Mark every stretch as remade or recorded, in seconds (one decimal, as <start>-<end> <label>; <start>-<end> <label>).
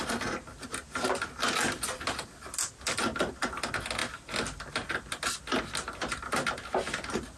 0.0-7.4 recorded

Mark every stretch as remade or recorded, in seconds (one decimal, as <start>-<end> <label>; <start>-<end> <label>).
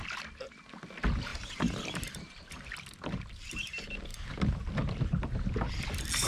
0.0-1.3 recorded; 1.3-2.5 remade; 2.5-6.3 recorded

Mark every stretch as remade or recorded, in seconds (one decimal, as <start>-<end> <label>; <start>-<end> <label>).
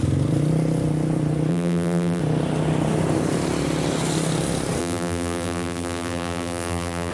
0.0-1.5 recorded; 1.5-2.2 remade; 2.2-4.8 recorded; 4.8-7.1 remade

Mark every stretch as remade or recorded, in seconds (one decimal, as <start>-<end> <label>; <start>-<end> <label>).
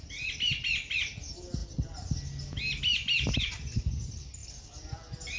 0.0-5.4 recorded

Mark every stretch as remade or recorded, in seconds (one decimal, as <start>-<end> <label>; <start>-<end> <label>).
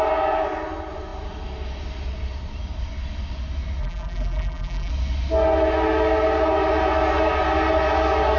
0.0-3.8 recorded; 3.8-4.9 remade; 4.9-8.4 recorded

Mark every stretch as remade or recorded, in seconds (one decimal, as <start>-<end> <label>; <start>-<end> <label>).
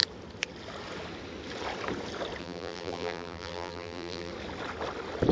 0.0-2.4 recorded; 2.4-4.3 remade; 4.3-5.3 recorded